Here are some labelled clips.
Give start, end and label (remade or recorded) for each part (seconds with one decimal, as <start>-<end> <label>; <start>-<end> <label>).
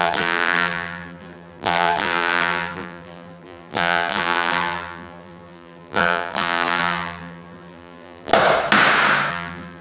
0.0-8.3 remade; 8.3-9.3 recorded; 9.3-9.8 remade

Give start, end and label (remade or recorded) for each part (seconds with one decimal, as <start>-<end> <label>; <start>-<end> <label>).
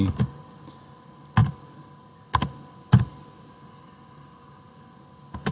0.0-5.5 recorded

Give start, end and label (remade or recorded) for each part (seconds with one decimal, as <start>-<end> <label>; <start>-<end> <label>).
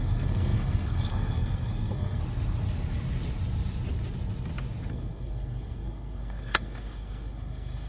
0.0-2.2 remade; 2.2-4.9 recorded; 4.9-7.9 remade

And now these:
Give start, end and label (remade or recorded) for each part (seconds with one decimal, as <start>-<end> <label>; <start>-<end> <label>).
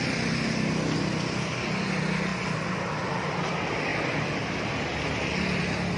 0.0-6.0 recorded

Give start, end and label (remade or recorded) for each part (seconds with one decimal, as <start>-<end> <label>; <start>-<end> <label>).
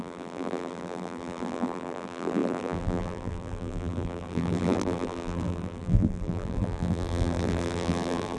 0.0-8.4 remade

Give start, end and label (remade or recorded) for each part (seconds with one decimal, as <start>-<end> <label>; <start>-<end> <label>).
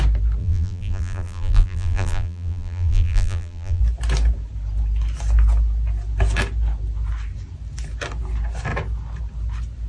0.0-0.4 recorded; 0.4-3.8 remade; 3.8-9.9 recorded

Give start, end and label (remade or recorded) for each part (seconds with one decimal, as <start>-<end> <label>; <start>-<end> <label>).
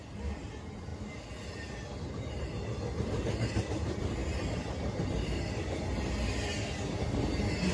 0.0-7.7 recorded